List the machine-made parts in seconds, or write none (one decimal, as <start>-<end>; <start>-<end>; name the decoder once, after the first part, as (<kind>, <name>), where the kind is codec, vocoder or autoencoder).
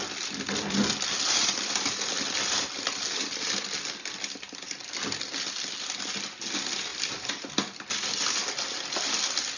6.9-7.5 (vocoder, BigVGAN v2)